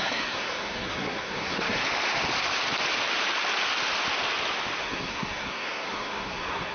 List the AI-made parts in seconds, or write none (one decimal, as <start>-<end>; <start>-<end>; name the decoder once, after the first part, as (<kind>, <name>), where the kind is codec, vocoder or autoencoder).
0.0-1.8 (codec, SNAC); 4.8-6.7